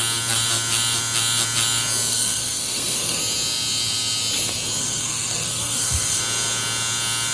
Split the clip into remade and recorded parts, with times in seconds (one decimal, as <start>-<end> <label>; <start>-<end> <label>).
0.0-2.1 recorded; 2.1-3.2 remade; 3.2-4.8 recorded; 4.8-6.2 remade; 6.2-7.3 recorded